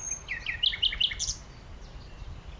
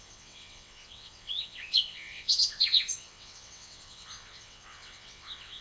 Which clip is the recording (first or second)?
first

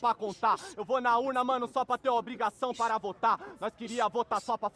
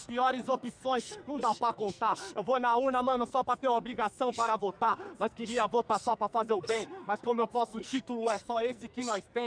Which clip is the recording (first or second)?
first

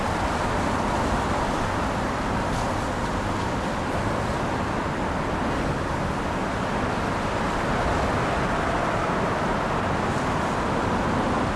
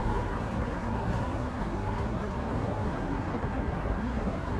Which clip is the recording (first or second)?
first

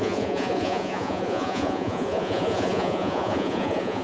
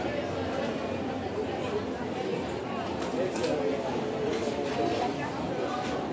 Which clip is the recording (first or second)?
second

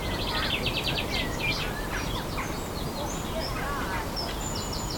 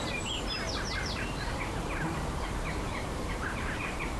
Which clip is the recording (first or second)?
first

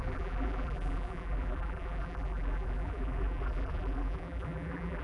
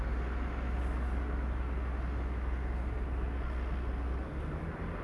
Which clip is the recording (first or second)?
second